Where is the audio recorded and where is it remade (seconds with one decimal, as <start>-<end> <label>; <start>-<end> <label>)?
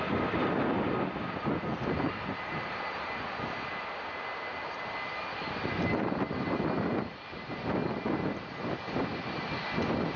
0.0-10.2 recorded